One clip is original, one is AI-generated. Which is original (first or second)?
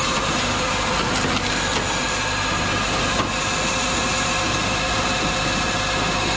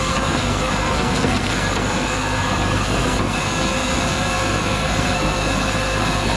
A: first